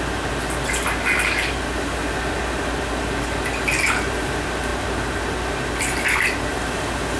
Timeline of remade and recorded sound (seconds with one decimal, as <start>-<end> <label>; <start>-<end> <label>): 0.0-7.2 recorded